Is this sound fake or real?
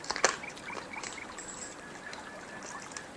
real